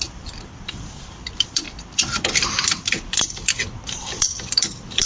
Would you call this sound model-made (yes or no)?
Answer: yes